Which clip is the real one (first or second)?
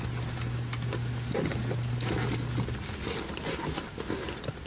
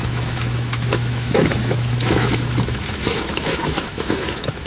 first